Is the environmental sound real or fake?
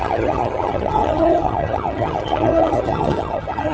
fake